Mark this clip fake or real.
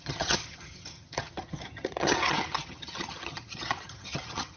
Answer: fake